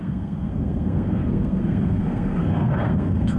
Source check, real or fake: fake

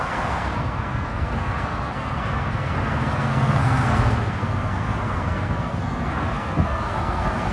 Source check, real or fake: fake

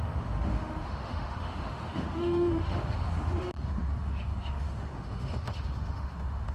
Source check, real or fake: fake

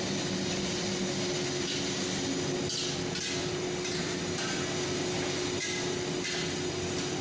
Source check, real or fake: real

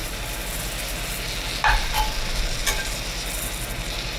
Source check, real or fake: real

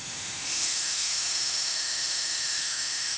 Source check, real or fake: fake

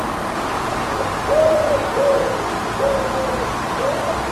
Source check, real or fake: real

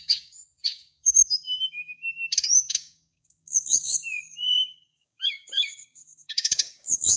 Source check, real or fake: fake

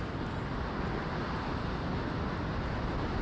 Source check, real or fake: real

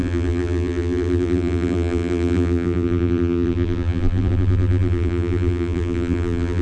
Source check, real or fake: fake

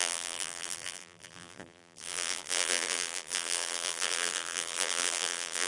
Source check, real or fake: fake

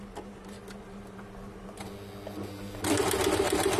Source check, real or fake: real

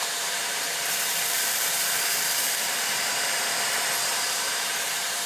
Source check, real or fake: fake